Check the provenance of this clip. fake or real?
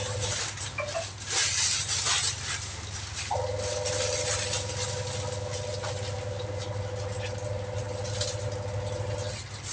real